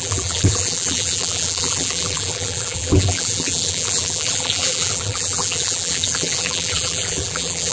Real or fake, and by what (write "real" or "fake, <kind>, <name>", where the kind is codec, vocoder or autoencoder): fake, vocoder, BigVGAN v2